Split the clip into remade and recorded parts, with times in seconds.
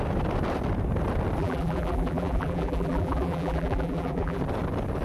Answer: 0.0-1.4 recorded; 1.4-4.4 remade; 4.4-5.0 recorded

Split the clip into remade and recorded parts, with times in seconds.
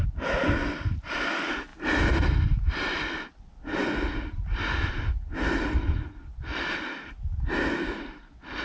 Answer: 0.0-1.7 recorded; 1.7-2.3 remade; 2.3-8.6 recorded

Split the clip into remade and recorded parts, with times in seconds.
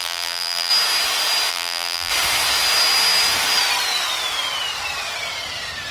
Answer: 0.0-0.7 remade; 0.7-1.5 recorded; 1.5-2.1 remade; 2.1-5.9 recorded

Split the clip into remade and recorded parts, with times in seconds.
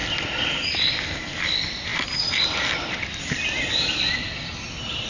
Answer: 0.0-5.1 recorded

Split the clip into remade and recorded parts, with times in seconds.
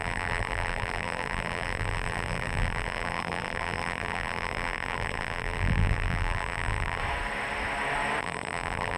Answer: 0.0-7.0 remade; 7.0-8.2 recorded; 8.2-9.0 remade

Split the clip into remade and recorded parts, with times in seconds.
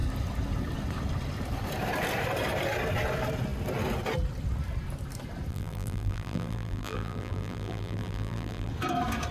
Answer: 0.0-5.5 recorded; 5.5-8.7 remade; 8.7-9.3 recorded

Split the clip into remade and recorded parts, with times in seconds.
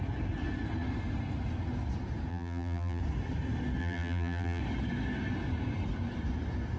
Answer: 0.0-2.3 recorded; 2.3-3.0 remade; 3.0-3.8 recorded; 3.8-4.6 remade; 4.6-6.8 recorded